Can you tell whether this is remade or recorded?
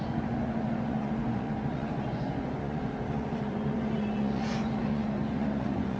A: remade